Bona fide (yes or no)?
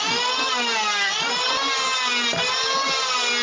yes